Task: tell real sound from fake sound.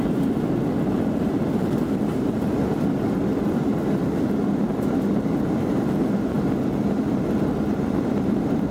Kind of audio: real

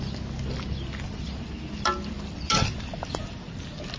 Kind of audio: real